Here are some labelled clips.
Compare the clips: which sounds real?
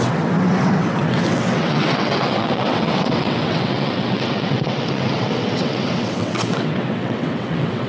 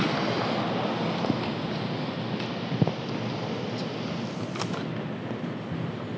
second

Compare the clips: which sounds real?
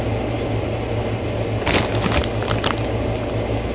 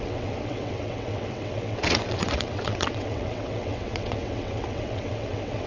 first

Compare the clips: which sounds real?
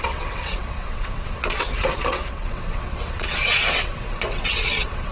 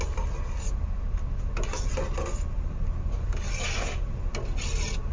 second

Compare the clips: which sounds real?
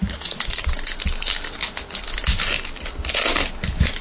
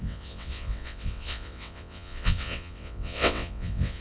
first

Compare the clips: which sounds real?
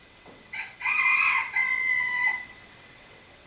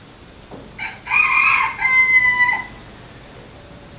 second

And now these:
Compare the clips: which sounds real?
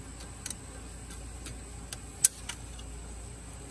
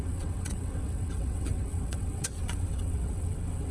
first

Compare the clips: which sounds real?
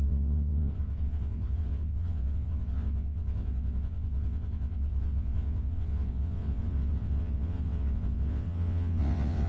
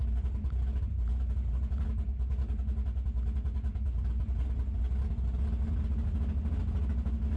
second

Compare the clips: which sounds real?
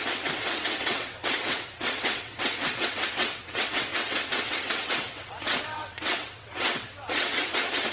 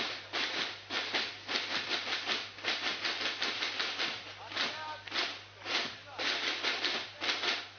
second